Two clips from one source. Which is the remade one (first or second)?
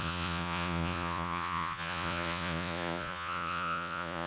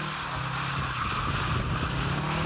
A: first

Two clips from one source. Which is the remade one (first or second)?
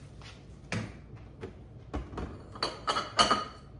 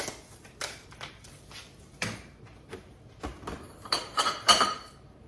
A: second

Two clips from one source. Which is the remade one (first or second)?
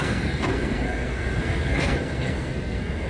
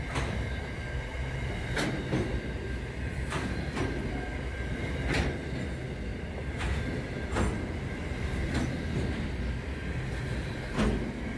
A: first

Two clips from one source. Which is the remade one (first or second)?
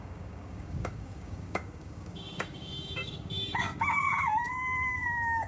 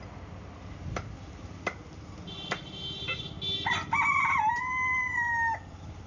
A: first